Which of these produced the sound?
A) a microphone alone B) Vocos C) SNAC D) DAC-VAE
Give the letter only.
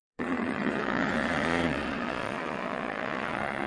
B